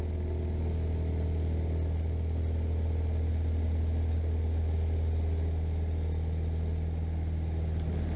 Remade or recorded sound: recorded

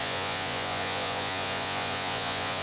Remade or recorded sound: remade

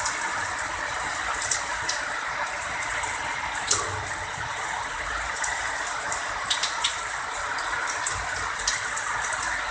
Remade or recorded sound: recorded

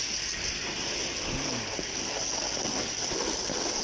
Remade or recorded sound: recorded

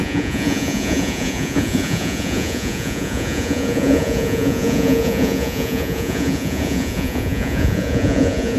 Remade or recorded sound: remade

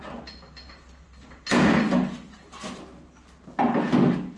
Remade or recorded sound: recorded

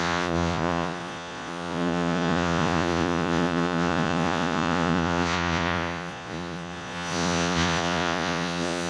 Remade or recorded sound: remade